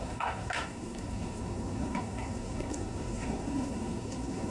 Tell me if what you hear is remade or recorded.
remade